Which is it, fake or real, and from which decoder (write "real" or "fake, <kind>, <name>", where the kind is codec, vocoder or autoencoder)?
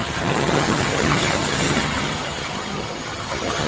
fake, vocoder, HiFi-GAN